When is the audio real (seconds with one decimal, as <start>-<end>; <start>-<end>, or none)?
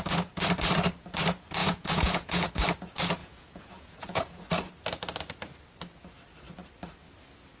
0.0-1.6; 2.5-3.2; 4.4-7.6